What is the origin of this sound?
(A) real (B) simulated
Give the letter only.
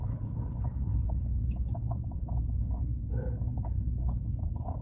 B